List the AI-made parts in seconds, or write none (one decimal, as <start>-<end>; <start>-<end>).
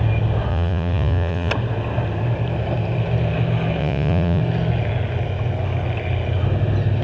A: 0.5-1.5; 3.8-4.4